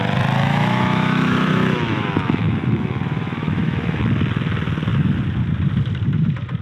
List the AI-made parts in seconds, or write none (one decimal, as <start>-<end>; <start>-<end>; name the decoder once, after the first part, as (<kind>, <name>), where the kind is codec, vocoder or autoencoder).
0.4-4.0 (autoencoder, DAC-VAE)